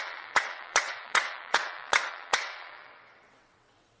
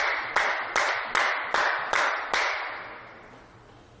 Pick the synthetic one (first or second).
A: first